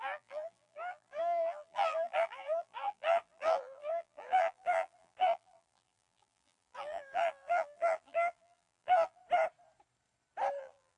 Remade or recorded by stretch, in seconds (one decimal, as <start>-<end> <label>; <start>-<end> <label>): 0.0-9.2 remade; 9.2-10.6 recorded; 10.6-11.0 remade